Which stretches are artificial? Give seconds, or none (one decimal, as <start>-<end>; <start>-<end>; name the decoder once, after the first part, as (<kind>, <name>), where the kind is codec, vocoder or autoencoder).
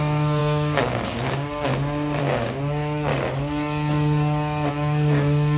0.0-1.7 (codec, DAC); 2.2-3.1; 4.7-5.6